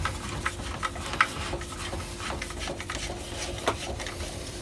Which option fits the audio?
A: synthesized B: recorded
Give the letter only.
B